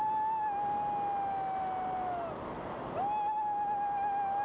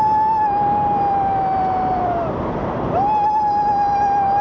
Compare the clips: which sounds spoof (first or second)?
second